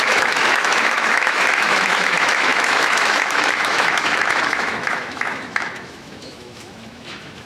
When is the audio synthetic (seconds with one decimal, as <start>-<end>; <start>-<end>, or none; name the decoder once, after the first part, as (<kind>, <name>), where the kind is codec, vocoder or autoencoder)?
0.0-7.5 (autoencoder, DAC-VAE)